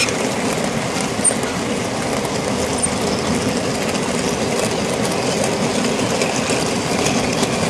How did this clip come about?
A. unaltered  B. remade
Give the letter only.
A